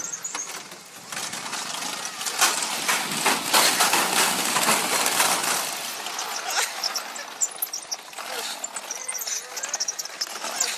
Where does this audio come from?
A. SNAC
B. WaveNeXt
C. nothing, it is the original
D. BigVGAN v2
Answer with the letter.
C